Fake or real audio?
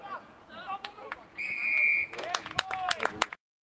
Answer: fake